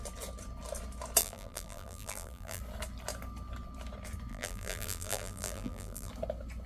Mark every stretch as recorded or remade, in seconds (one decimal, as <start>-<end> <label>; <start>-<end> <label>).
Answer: 0.0-1.2 recorded; 1.2-2.6 remade; 2.6-4.3 recorded; 4.3-6.1 remade; 6.1-6.7 recorded